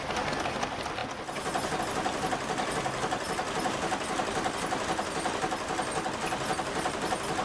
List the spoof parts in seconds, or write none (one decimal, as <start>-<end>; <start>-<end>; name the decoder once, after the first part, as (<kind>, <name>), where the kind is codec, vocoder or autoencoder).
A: none